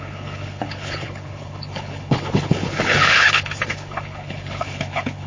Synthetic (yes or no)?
yes